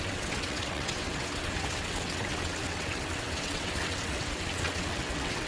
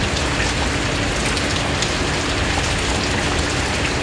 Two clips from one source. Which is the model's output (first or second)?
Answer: first